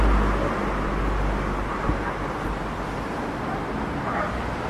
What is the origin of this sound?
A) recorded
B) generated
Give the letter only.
A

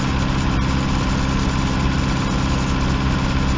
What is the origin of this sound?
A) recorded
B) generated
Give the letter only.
A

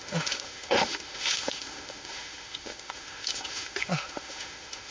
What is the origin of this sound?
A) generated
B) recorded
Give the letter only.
A